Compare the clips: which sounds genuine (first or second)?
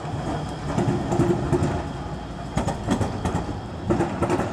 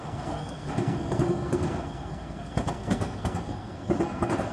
first